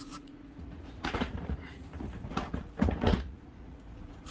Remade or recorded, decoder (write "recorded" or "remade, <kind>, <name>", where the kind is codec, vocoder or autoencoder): remade, vocoder, Vocos